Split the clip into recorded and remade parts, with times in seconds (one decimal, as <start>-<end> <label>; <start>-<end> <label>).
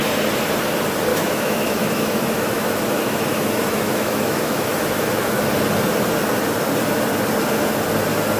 0.0-1.1 recorded; 1.1-5.4 remade; 5.4-8.4 recorded